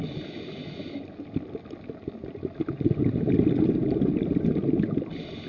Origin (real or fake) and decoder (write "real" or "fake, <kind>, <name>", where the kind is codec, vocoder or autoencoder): real